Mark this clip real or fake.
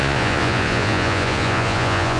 fake